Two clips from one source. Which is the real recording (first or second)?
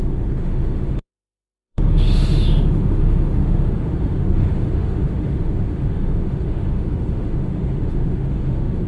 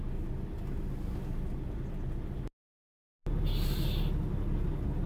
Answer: second